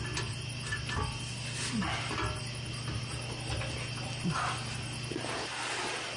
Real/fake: real